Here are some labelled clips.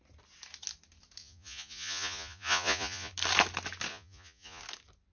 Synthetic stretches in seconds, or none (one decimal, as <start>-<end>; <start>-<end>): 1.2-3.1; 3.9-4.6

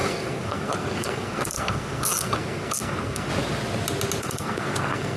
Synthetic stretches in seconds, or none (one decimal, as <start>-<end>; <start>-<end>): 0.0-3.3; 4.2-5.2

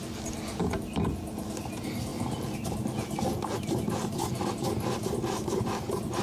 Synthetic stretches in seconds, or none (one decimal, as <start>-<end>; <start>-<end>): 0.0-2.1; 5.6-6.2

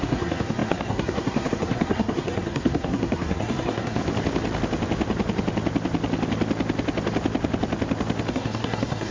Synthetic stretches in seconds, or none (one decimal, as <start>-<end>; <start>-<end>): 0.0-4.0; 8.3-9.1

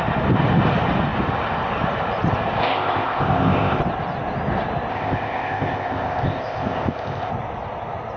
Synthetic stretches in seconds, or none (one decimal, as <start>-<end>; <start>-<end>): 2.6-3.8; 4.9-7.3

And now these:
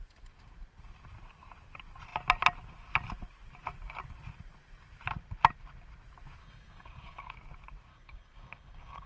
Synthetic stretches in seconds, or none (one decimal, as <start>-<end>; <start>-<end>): 6.4-7.3; 7.9-9.1